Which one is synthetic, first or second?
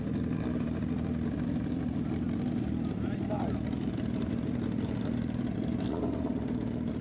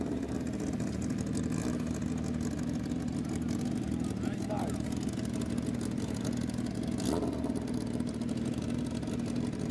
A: first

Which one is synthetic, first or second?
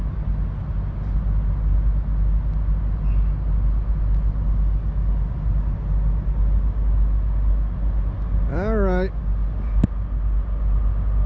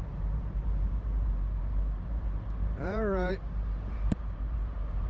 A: second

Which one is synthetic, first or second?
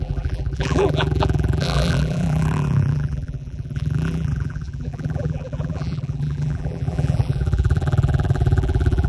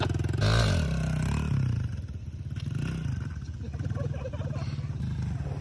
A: first